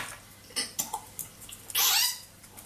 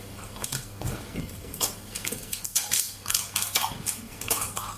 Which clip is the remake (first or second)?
second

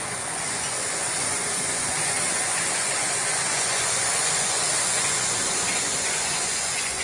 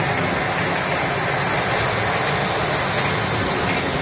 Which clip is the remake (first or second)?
first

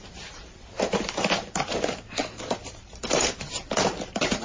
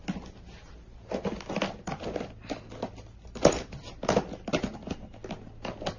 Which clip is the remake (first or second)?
first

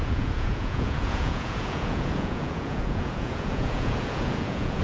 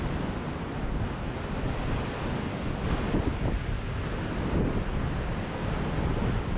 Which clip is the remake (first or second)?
first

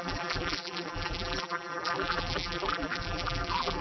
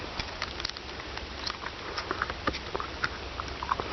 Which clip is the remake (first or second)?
first